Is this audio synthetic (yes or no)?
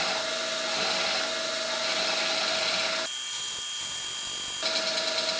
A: no